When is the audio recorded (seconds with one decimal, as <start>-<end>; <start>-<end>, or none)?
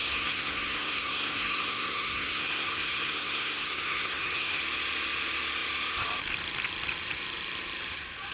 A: 4.6-8.3